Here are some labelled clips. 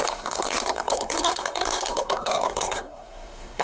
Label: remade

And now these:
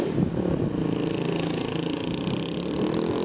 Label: recorded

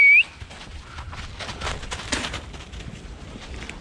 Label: recorded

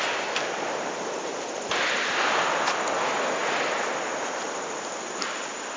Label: recorded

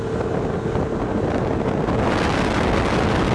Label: recorded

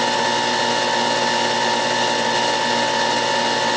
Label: recorded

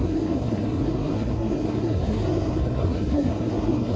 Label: remade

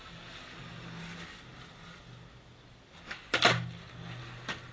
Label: recorded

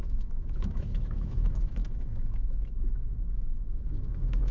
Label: remade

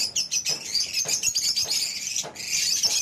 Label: recorded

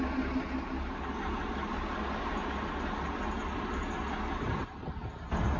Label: recorded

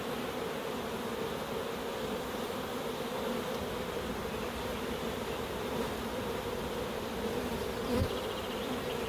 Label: remade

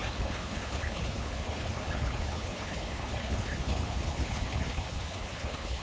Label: remade